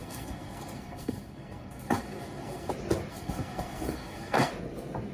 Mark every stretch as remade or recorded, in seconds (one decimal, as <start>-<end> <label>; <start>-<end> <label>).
0.0-2.7 remade; 2.7-3.1 recorded; 3.1-4.5 remade; 4.5-5.1 recorded